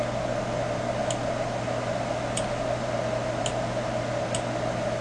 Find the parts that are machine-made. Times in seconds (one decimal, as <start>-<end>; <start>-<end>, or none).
none